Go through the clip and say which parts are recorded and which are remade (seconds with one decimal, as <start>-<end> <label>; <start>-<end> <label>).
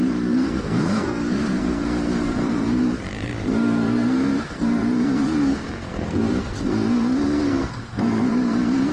0.0-2.8 remade; 2.8-3.5 recorded; 3.5-8.9 remade